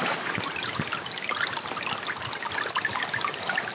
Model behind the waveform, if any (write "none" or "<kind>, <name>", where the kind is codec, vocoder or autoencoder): none